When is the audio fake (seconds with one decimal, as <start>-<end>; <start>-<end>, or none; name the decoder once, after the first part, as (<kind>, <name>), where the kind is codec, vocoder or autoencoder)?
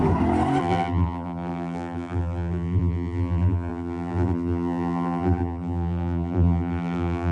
0.6-7.3 (vocoder, BigVGAN v2)